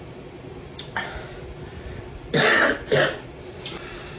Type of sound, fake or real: real